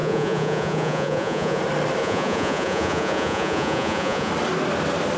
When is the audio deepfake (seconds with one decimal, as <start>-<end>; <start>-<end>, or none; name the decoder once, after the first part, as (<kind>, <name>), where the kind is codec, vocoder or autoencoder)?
0.0-1.6 (vocoder, Vocos); 2.0-4.3